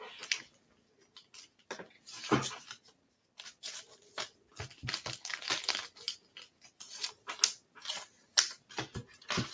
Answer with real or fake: real